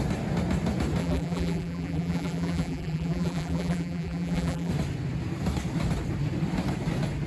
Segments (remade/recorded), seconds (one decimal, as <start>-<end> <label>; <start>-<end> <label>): 0.0-1.0 recorded; 1.0-4.7 remade; 4.7-7.3 recorded